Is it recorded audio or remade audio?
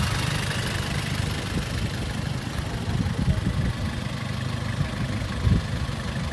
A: recorded